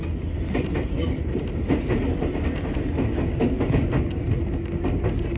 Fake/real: real